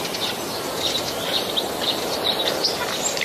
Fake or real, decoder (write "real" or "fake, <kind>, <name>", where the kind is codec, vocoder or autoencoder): real